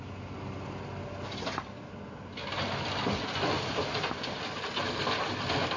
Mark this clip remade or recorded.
recorded